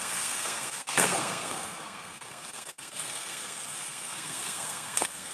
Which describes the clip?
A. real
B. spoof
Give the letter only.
B